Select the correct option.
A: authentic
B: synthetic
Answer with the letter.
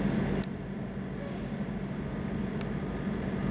A